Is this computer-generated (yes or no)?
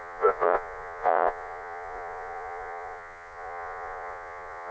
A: yes